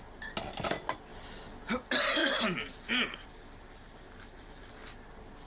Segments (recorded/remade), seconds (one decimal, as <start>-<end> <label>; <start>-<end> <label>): 0.0-2.2 recorded; 2.2-4.7 remade; 4.7-5.5 recorded